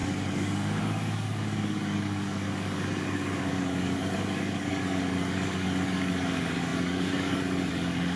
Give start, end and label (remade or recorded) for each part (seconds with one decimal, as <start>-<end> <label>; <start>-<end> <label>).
0.0-8.2 remade